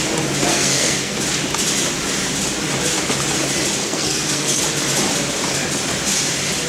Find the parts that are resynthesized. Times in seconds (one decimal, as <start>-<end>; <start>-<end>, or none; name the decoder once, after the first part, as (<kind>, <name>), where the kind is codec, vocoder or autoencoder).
0.5-1.2 (codec, SNAC); 3.8-4.6